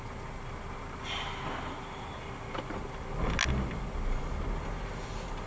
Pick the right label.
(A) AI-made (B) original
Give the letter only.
B